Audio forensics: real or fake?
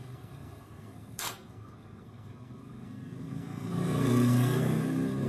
fake